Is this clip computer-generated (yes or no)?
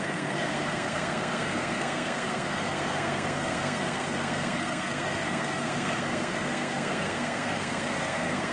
yes